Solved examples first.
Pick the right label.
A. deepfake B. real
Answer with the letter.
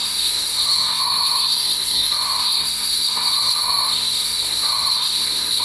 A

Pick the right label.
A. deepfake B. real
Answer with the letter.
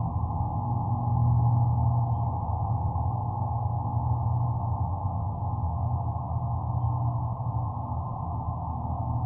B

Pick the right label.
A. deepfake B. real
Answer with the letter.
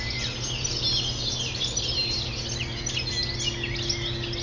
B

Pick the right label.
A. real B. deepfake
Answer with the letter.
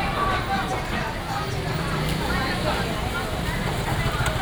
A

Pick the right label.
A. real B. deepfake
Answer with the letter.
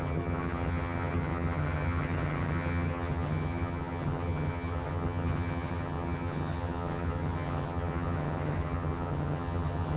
B